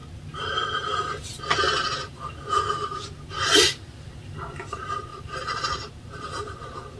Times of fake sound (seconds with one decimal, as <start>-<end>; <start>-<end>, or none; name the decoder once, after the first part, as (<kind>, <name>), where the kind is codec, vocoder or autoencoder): 5.1-5.9 (vocoder, BigVGAN v2)